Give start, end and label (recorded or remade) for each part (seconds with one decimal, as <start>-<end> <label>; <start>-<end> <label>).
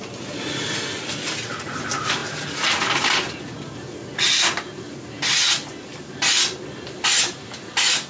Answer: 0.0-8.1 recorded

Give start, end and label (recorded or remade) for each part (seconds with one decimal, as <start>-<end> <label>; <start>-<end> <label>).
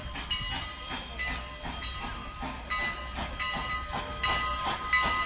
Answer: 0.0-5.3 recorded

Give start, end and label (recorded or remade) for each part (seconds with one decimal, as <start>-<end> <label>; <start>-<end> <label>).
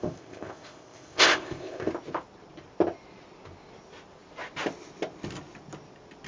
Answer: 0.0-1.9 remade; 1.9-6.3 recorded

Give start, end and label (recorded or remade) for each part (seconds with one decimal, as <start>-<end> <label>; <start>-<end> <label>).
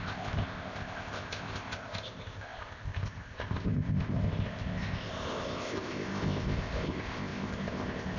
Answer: 0.0-8.2 remade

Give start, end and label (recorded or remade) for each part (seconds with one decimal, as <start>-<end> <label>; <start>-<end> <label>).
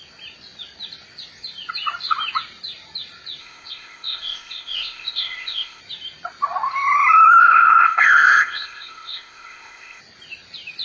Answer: 0.0-3.4 recorded; 3.4-5.8 remade; 5.8-7.4 recorded; 7.4-10.0 remade; 10.0-10.8 recorded